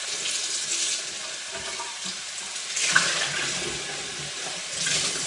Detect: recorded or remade recorded